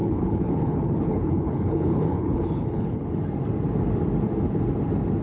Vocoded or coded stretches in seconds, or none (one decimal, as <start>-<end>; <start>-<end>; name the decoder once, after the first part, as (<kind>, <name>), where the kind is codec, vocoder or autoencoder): 0.0-3.1 (codec, HILCodec)